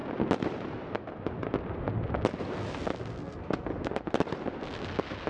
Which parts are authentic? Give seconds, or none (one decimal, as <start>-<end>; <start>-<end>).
0.0-3.2; 3.7-5.3